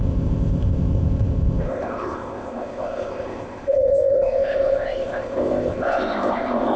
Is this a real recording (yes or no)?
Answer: no